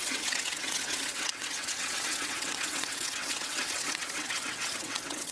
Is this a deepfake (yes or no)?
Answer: yes